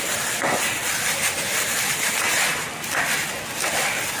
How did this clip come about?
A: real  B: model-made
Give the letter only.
A